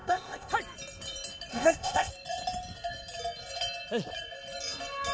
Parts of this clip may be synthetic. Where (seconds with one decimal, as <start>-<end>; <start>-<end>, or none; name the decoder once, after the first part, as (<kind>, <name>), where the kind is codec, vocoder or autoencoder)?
0.0-0.5 (codec, ZipCodec); 1.5-2.1